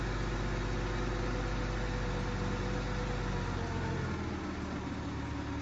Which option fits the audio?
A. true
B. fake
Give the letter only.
A